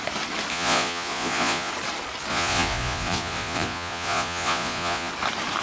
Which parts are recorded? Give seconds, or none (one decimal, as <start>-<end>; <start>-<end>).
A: 0.0-0.5; 1.7-2.3; 5.1-5.6